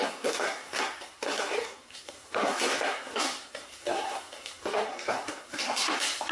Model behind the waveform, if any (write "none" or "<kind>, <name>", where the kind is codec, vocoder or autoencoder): codec, SNAC